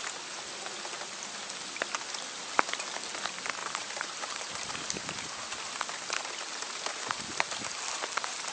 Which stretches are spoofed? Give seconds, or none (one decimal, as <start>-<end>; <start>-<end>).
3.6-5.0